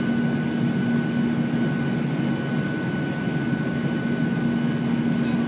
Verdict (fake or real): real